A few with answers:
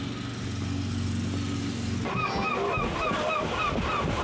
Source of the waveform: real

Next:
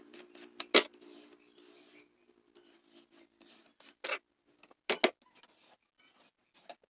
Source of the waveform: real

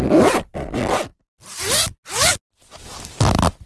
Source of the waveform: real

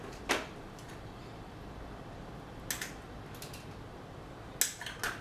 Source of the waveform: real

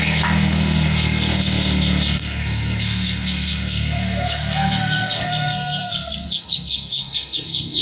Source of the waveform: fake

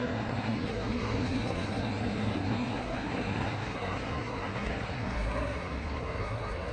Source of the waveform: fake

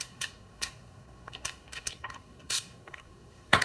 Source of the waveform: fake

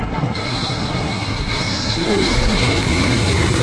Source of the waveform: fake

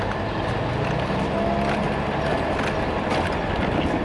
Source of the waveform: real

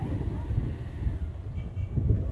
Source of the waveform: real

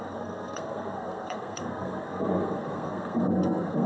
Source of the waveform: fake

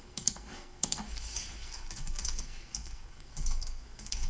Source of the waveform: fake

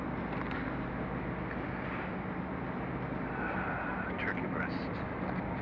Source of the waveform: real